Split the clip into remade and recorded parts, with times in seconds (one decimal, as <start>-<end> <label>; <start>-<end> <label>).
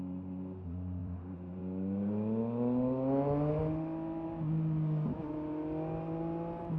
0.0-1.0 recorded; 1.0-1.6 remade; 1.6-6.8 recorded